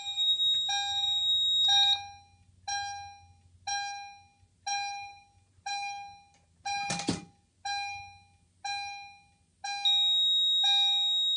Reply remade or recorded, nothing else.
recorded